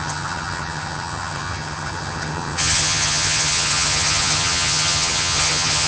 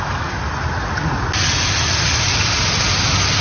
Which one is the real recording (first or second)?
second